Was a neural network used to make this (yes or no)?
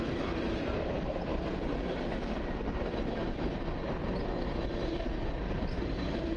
no